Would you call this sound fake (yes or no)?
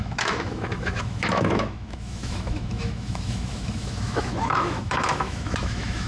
yes